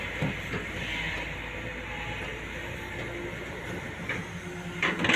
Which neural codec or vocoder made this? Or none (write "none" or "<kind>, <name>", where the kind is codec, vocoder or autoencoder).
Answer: none